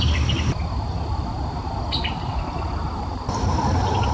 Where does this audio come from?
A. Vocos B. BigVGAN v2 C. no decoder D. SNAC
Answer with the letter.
C